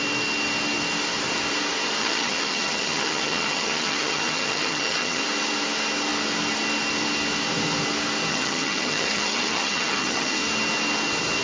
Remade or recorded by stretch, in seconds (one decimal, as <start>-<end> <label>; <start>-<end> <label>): 0.0-2.0 recorded; 2.0-5.2 remade; 5.2-8.3 recorded; 8.3-10.4 remade; 10.4-11.4 recorded